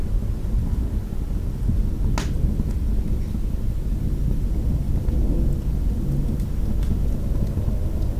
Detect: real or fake real